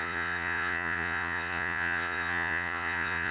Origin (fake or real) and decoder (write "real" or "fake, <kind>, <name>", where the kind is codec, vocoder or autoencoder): fake, vocoder, Vocos